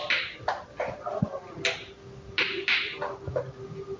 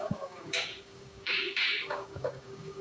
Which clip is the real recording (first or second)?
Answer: first